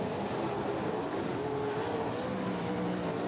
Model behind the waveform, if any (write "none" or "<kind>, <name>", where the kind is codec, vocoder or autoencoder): none